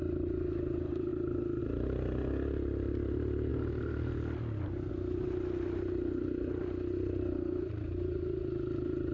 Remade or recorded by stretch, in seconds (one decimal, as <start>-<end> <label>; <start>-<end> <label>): 0.0-9.1 recorded

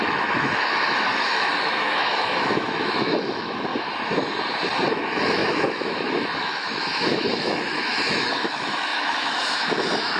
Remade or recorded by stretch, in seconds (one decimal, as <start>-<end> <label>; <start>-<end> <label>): 0.0-3.7 remade; 3.7-4.9 recorded; 4.9-10.2 remade

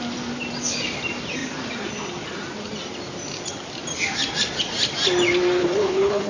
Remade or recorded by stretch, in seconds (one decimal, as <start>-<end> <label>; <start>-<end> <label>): 0.0-5.6 recorded; 5.6-6.3 remade